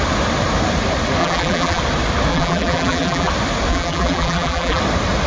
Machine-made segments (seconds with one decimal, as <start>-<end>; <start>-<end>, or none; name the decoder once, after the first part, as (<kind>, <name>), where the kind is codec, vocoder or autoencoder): 1.2-1.8 (vocoder, BigVGAN v2); 2.3-3.3; 3.7-4.8